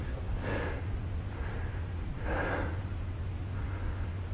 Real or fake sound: real